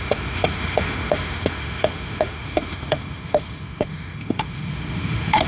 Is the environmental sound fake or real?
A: fake